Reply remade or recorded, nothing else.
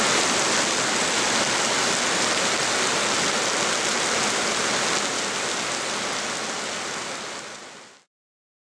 recorded